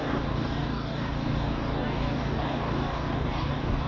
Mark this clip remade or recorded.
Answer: remade